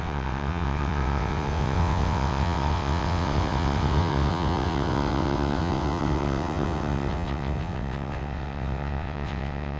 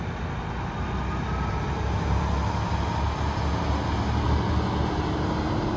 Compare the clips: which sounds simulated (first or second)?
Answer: first